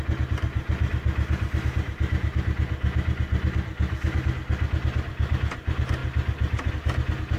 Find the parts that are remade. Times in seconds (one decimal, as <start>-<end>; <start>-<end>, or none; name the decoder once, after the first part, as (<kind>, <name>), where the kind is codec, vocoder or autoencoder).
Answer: none